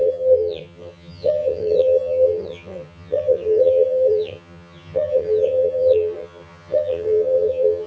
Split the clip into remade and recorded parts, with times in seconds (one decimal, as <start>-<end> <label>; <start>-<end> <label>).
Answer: 0.0-7.9 remade